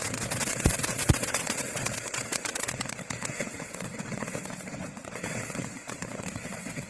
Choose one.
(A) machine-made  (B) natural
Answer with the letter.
A